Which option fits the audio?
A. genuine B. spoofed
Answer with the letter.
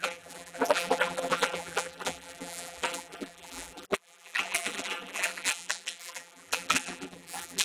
B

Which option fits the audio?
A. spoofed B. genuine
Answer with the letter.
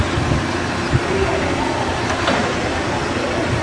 B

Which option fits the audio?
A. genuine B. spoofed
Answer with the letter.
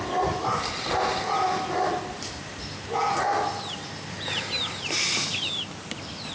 A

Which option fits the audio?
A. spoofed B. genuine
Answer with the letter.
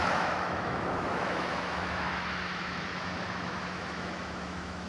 A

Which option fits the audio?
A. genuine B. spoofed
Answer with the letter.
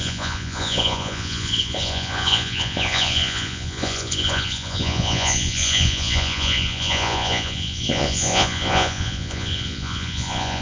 B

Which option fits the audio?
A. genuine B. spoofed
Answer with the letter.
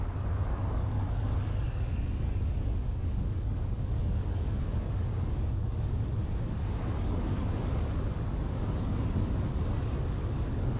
B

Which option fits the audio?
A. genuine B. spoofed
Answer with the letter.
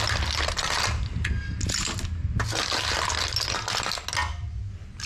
A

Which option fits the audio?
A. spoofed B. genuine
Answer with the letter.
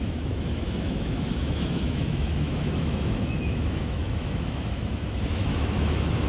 A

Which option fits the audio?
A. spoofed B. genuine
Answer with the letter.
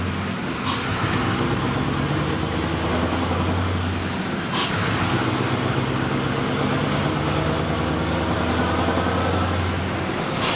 B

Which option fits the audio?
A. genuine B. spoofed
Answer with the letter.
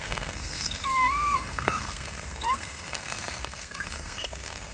B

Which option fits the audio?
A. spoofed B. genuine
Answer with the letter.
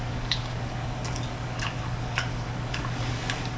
A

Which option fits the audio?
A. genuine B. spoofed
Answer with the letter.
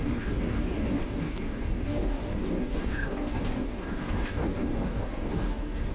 B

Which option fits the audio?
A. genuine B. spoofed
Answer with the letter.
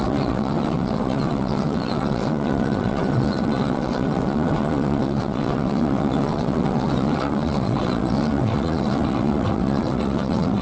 B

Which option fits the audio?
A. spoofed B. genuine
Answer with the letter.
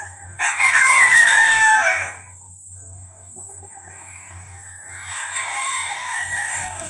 A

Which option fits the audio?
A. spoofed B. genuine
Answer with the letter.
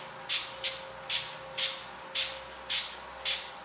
B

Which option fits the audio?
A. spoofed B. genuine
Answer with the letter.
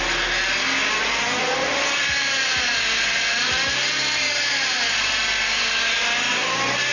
B